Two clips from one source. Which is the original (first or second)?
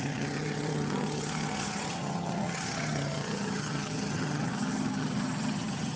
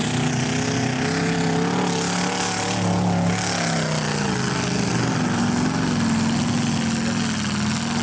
second